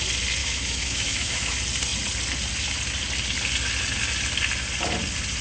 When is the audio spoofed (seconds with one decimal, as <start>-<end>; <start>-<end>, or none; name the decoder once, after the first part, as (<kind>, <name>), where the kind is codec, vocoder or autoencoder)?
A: 0.4-1.5 (autoencoder, DAC-VAE)